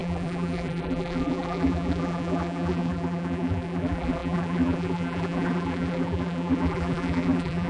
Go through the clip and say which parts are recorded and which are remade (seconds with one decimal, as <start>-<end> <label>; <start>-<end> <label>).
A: 0.0-7.7 remade